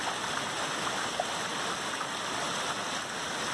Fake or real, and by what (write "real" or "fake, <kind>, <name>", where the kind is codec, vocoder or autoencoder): real